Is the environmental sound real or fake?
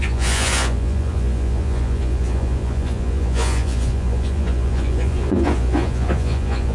fake